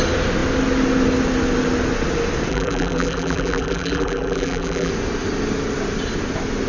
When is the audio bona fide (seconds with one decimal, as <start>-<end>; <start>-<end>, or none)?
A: 0.0-2.5; 4.9-6.7